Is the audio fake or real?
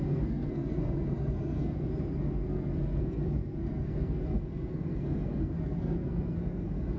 fake